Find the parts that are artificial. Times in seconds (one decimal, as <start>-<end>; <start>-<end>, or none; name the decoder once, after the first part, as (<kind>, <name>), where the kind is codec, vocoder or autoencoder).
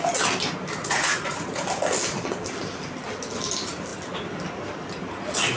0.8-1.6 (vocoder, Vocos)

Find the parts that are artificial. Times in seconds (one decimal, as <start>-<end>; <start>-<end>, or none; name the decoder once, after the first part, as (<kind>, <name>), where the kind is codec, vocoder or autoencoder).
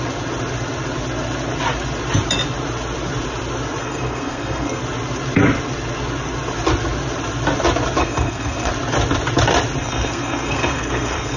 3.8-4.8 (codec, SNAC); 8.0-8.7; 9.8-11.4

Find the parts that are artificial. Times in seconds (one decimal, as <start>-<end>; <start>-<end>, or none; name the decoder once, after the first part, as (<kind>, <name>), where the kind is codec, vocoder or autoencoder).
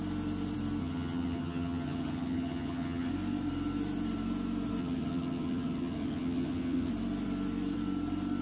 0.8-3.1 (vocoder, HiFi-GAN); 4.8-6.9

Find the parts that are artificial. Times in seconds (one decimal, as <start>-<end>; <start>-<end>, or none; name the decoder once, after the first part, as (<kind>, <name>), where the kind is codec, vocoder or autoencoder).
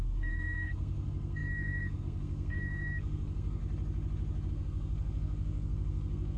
0.0-3.6 (codec, SNAC); 4.5-6.4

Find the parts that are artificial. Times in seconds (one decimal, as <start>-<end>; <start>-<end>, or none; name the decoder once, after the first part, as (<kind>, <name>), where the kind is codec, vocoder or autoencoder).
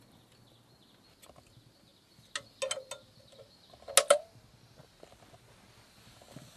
none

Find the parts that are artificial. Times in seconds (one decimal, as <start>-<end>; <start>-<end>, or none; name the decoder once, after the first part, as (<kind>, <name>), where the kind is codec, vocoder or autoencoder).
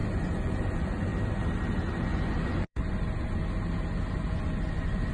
0.0-1.1 (vocoder, Vocos); 2.0-3.4; 4.1-5.1